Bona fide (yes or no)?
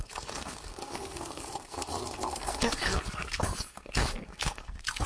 no